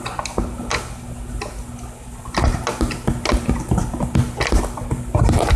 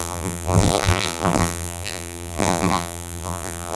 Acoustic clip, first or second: first